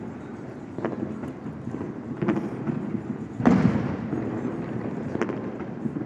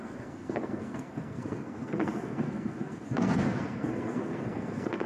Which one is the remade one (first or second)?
second